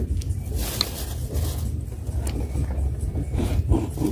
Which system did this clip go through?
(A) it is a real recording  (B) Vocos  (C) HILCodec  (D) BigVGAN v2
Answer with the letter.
A